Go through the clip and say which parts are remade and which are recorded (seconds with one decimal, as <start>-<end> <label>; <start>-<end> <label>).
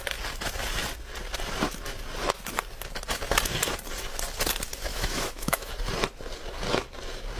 0.0-4.9 recorded; 4.9-5.7 remade; 5.7-7.4 recorded